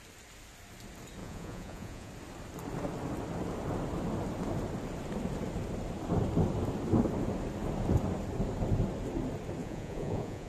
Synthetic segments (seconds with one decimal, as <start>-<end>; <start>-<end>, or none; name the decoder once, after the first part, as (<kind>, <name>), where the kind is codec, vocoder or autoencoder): 1.2-2.1 (vocoder, Vocos); 9.6-10.5